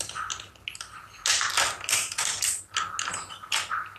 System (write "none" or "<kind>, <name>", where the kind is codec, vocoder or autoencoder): none